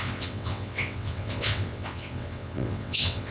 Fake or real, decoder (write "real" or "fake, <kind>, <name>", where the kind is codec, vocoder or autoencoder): fake, vocoder, WaveNeXt